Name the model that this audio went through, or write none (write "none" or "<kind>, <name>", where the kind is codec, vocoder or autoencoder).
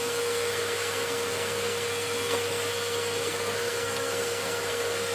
codec, SNAC